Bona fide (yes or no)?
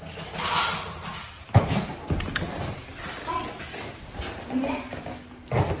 yes